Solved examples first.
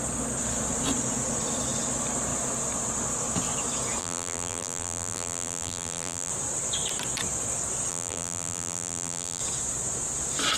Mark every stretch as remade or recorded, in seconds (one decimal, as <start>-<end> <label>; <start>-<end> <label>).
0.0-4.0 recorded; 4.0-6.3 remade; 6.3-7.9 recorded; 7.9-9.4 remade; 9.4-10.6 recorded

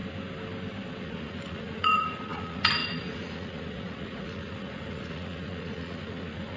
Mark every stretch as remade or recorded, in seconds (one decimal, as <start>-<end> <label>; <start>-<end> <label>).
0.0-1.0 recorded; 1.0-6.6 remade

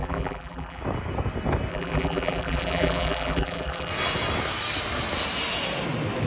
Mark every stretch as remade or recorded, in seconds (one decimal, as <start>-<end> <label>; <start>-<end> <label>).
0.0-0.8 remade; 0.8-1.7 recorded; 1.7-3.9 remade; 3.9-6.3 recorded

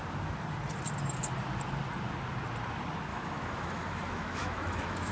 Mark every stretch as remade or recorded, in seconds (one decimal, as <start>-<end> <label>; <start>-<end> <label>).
0.0-3.1 recorded; 3.1-5.1 remade

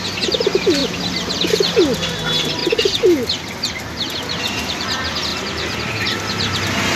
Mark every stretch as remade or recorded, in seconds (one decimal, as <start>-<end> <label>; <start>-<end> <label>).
0.0-5.3 recorded; 5.3-5.9 remade; 5.9-7.0 recorded